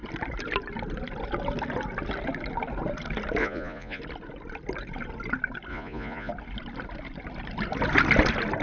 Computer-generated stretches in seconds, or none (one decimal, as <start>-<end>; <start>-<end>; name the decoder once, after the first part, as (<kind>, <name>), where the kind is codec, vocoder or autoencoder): 3.4-4.0 (vocoder, Vocos); 5.7-6.3